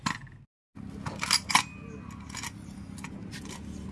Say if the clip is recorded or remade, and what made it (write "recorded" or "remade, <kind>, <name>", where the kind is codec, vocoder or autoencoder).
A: recorded